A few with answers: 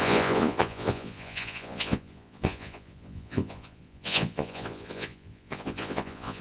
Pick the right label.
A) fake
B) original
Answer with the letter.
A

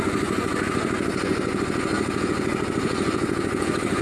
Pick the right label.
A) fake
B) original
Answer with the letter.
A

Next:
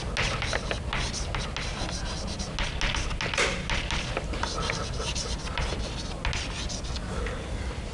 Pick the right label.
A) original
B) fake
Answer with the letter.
A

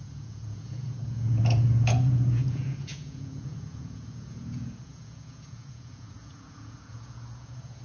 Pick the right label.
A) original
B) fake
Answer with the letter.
B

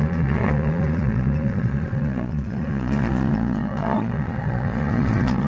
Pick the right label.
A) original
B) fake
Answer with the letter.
B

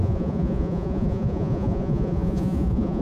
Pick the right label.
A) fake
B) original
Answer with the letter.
A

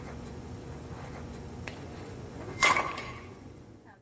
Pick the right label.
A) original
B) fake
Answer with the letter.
B